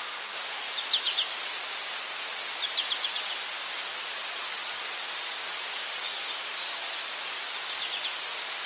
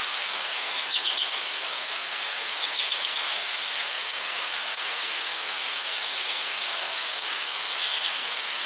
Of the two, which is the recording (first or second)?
first